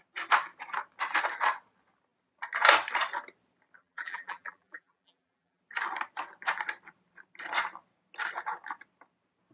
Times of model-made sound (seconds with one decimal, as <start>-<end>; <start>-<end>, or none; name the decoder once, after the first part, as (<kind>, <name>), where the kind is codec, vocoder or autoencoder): 3.8-5.6 (vocoder, BigVGAN v2)